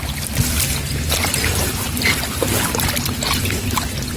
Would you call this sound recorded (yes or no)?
yes